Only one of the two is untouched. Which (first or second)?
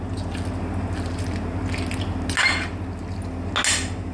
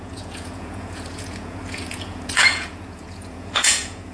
first